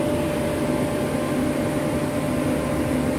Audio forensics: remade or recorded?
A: recorded